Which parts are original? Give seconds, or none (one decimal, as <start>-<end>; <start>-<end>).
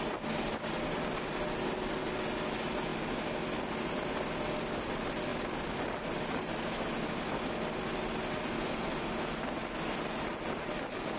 0.0-11.2